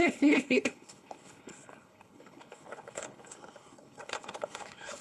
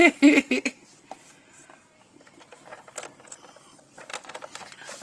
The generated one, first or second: first